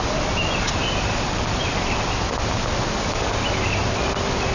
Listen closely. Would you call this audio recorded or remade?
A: recorded